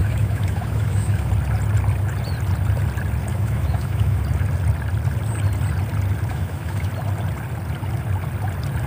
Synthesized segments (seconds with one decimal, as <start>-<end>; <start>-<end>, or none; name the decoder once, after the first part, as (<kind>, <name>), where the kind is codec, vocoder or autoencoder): 0.0-1.3 (autoencoder, DAC-VAE); 3.3-4.2; 6.3-6.9